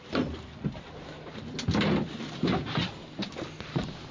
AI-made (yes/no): no